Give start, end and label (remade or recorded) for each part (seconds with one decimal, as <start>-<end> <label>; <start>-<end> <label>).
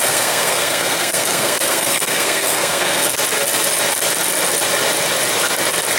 0.0-3.2 remade; 3.2-6.0 recorded